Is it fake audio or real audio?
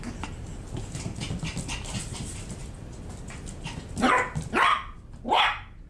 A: real